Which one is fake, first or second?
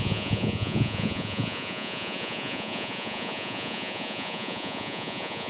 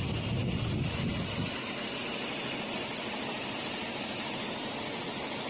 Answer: first